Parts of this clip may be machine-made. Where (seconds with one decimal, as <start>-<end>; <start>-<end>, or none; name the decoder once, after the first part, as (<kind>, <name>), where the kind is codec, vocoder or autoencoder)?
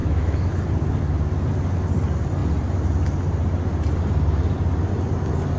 0.0-0.5 (autoencoder, DAC-VAE)